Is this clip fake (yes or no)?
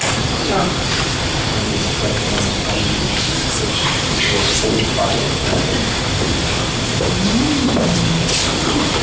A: yes